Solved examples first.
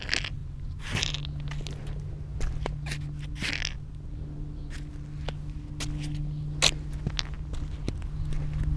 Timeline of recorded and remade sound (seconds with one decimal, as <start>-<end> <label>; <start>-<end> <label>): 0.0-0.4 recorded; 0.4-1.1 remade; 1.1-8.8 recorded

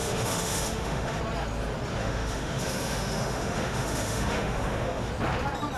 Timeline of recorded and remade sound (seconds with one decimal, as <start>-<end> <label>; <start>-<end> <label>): 0.0-1.2 remade; 1.2-2.0 recorded; 2.0-5.1 remade; 5.1-5.8 recorded

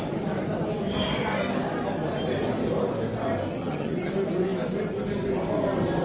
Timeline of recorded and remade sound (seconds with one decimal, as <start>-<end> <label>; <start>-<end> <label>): 0.0-3.5 recorded; 3.5-4.1 remade; 4.1-6.0 recorded

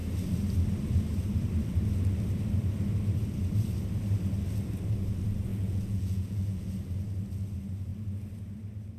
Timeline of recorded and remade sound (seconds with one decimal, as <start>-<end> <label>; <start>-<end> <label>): 0.0-5.5 recorded; 5.5-6.7 remade; 6.7-9.0 recorded

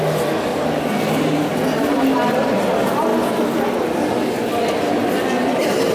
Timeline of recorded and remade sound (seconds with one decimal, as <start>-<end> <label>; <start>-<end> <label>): 0.0-5.9 recorded

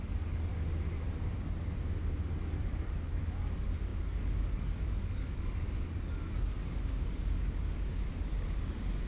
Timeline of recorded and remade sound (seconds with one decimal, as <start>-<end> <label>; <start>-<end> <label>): 0.0-0.5 remade; 0.5-2.4 recorded; 2.4-9.1 remade

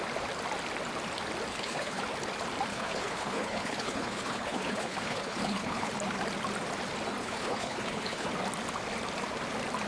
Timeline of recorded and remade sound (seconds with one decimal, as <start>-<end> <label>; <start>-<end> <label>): 0.0-1.5 recorded; 1.5-2.0 remade; 2.0-2.7 recorded; 2.7-5.9 remade; 5.9-7.2 recorded; 7.2-8.3 remade; 8.3-9.9 recorded

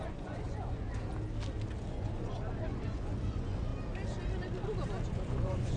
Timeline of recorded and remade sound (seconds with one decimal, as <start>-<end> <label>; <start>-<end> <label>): 0.0-0.9 remade; 0.9-1.9 recorded; 1.9-3.7 remade; 3.7-5.1 recorded; 5.1-5.8 remade